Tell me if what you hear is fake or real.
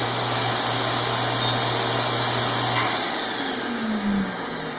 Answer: real